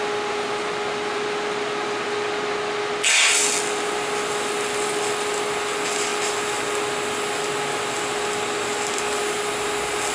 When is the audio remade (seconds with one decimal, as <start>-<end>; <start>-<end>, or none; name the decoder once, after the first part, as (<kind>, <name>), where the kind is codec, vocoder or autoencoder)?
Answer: none